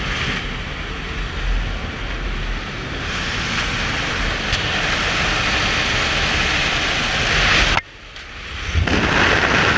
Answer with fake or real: real